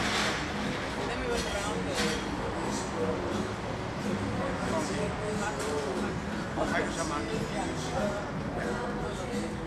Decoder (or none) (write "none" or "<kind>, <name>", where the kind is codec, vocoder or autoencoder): none